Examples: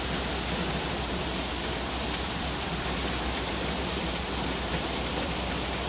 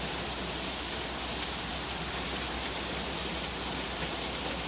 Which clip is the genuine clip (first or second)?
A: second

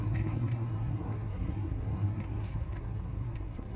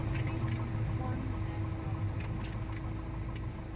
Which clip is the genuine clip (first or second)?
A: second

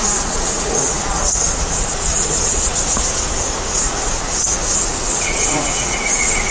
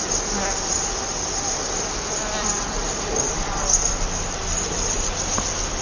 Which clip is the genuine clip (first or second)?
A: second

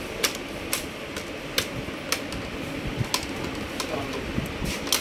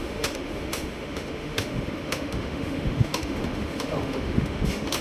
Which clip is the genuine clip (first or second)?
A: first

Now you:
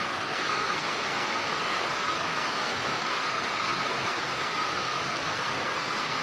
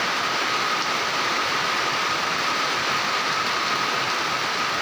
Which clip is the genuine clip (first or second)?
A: second